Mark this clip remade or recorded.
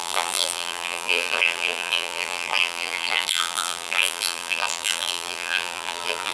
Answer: remade